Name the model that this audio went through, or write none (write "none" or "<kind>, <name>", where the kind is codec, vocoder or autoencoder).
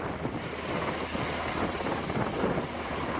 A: none